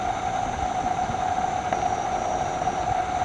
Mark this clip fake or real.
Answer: real